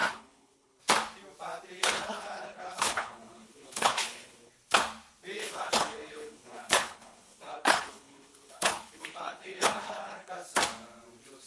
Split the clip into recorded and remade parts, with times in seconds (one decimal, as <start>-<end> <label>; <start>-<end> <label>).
0.0-0.8 remade; 0.8-1.8 recorded; 1.8-4.5 remade; 4.5-5.4 recorded; 5.4-10.3 remade; 10.3-11.5 recorded